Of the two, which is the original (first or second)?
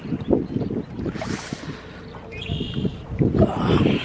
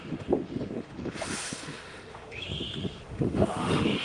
first